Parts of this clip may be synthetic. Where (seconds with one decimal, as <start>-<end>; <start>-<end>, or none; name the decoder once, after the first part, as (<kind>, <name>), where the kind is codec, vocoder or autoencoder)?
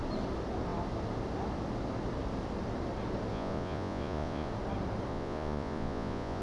3.3-4.5 (vocoder, Vocos); 5.1-6.4